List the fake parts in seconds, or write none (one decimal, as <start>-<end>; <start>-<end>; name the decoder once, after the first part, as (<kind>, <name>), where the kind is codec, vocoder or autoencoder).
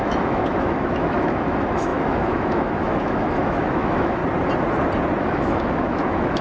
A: 0.0-4.2 (autoencoder, DAC-VAE); 5.2-6.4